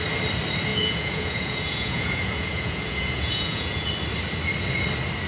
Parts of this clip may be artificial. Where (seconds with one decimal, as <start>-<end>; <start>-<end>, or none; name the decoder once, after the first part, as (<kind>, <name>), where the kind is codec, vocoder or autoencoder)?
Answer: 0.7-3.9 (vocoder, Vocos)